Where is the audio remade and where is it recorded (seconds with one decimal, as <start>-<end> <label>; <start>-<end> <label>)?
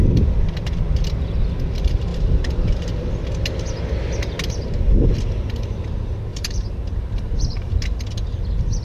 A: 0.0-2.1 recorded; 2.1-3.1 remade; 3.1-6.3 recorded; 6.3-7.7 remade; 7.7-8.8 recorded